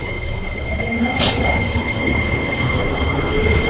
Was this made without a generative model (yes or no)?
no